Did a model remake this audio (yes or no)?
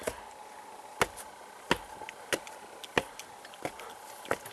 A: no